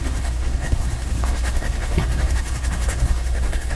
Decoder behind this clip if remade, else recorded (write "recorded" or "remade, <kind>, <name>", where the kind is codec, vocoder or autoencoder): remade, codec, SNAC